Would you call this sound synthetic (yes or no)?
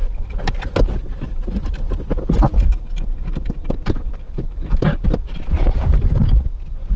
no